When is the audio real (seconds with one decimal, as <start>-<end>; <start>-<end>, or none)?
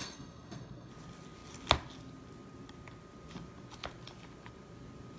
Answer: 0.9-5.2